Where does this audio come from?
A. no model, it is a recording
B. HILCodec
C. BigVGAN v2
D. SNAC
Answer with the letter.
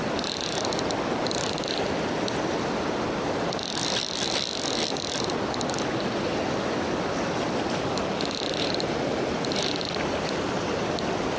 A